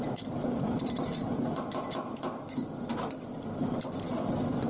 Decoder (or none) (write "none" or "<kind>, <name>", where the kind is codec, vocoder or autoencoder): none